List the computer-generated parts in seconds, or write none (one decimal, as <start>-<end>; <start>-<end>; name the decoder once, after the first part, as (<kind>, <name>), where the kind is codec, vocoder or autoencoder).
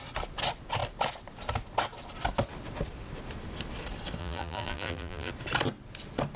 4.2-5.3 (vocoder, BigVGAN v2)